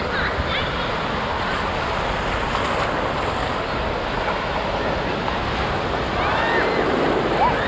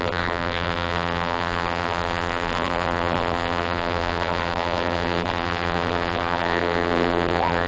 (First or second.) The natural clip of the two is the first